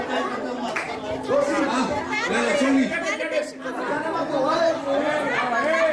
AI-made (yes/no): no